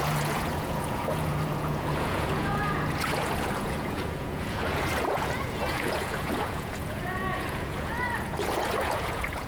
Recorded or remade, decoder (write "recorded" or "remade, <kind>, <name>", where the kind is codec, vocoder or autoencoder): remade, vocoder, Vocos